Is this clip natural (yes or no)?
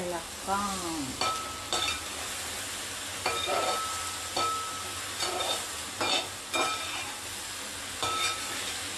yes